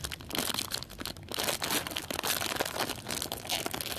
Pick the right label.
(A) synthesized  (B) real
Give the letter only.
B